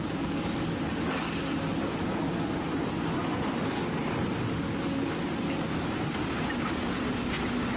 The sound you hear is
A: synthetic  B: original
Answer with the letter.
B